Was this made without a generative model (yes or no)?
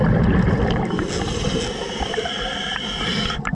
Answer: yes